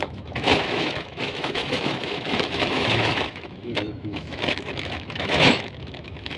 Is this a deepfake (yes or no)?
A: yes